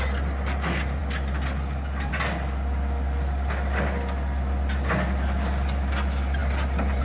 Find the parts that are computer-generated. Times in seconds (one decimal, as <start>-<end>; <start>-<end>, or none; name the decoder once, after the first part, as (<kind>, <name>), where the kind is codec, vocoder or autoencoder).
none